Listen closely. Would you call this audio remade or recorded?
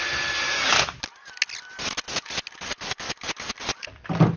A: recorded